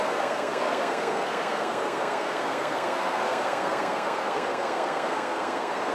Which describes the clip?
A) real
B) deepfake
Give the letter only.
B